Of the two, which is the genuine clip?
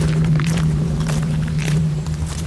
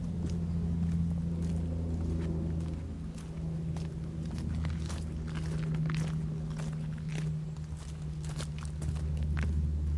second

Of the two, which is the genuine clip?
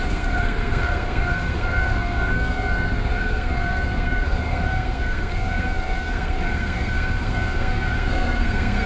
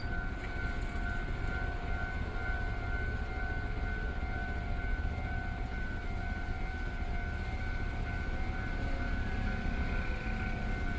second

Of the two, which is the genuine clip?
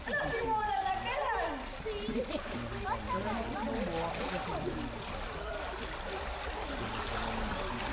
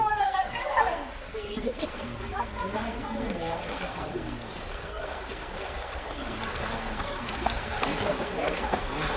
first